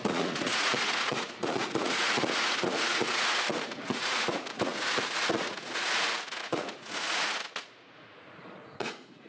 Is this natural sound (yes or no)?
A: no